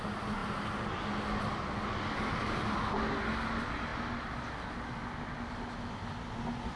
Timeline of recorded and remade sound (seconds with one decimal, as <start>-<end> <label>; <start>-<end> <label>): 0.0-6.8 recorded